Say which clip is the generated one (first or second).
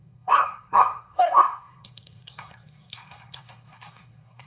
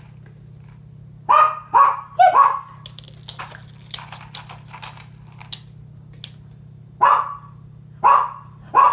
first